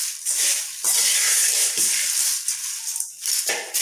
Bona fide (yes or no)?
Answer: yes